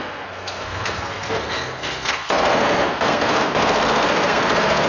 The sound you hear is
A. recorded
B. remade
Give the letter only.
B